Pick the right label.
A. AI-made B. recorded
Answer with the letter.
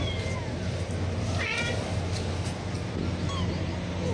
B